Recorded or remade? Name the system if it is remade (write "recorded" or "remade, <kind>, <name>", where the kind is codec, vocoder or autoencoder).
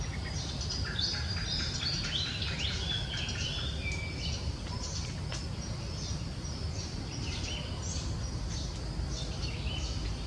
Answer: recorded